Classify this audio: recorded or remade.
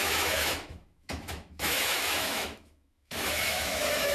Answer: remade